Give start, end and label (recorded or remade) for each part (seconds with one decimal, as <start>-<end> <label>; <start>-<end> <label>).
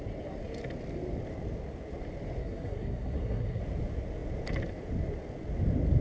0.0-2.4 recorded; 2.4-3.6 remade; 3.6-6.0 recorded